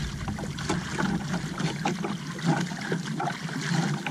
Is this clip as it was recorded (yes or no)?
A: yes